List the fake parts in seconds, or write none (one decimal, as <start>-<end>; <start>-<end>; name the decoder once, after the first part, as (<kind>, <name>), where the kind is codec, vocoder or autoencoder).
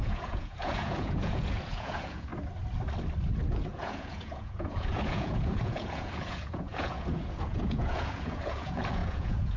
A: 0.0-2.3 (vocoder, Vocos); 3.5-9.6